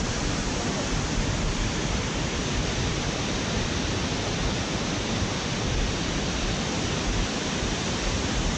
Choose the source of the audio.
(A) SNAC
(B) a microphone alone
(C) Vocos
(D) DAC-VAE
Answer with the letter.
B